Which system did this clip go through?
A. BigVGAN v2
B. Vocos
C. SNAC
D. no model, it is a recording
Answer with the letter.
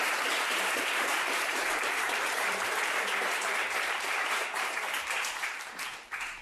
A